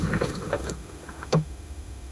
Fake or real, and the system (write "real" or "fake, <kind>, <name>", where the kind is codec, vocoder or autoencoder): fake, autoencoder, DAC-VAE